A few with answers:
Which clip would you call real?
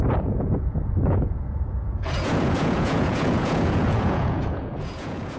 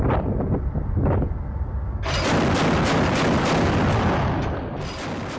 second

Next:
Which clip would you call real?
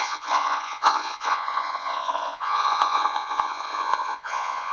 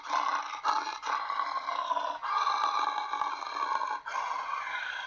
second